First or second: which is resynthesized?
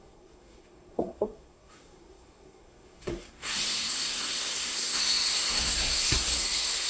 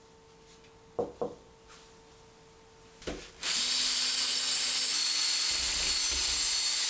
first